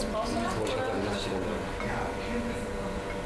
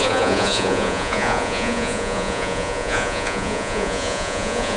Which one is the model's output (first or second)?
second